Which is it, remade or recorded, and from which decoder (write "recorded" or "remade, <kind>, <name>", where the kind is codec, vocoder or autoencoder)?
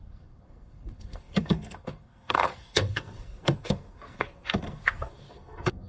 remade, codec, SNAC